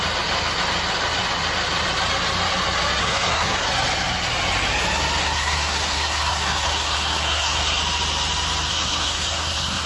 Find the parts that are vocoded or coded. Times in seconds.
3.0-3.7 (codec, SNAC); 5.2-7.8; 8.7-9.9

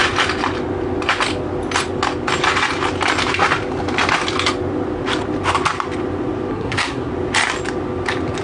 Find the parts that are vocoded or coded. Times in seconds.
6.5-7.1 (codec, SNAC)

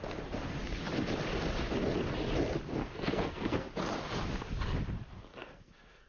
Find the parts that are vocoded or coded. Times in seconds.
2.8-3.7 (codec, SNAC); 5.3-6.1

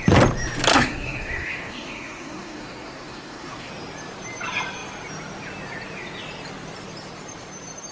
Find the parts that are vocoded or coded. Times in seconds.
0.7-3.7 (codec, SNAC)

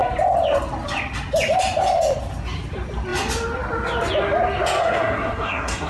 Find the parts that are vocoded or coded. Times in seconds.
4.8-5.9 (codec, SNAC)